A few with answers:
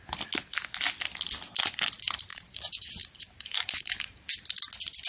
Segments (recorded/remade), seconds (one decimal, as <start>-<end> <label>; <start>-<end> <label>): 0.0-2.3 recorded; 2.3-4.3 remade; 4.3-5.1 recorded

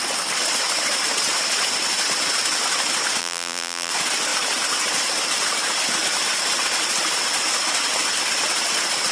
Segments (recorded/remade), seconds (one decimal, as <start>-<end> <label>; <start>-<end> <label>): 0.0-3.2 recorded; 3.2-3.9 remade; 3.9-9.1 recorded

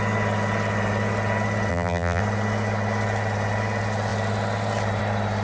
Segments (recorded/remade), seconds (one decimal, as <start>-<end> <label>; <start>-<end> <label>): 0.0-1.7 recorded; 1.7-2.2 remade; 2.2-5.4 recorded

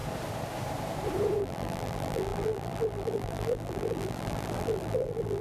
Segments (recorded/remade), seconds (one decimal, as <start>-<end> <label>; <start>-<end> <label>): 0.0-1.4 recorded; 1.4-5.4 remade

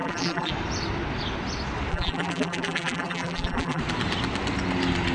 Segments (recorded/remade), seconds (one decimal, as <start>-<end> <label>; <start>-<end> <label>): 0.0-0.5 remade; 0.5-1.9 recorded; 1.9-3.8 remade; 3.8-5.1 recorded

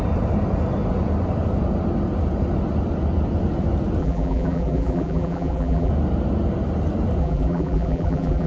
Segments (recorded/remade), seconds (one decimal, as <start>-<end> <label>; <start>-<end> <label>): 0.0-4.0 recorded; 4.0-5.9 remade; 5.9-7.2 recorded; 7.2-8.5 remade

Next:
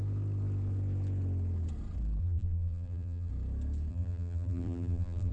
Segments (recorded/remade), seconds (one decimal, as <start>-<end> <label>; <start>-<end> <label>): 0.0-2.2 recorded; 2.2-3.3 remade; 3.3-3.9 recorded; 3.9-5.3 remade

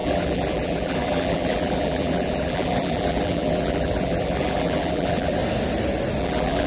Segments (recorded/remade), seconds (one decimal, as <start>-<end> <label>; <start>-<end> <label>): 0.0-5.4 remade; 5.4-6.2 recorded; 6.2-6.7 remade